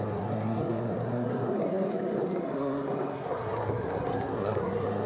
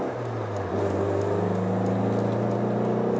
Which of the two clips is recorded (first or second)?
second